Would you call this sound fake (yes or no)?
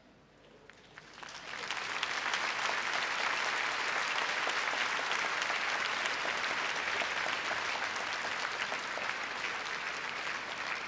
no